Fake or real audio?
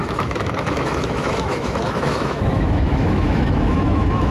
fake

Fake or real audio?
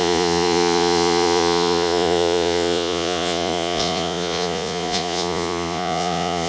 fake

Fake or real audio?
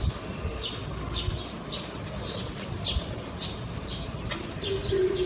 real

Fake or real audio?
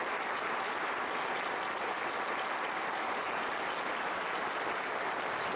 real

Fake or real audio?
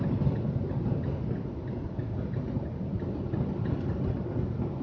real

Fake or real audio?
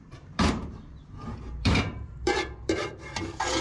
fake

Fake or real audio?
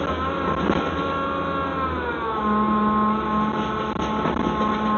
real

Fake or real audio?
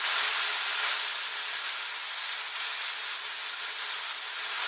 real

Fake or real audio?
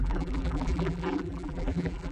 fake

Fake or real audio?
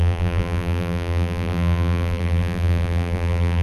fake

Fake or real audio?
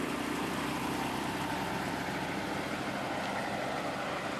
real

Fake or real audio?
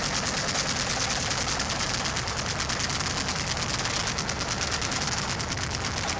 real